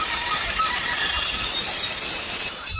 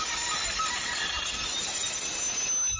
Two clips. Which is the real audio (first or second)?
second